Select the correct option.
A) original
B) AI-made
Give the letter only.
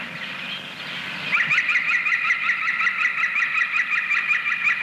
B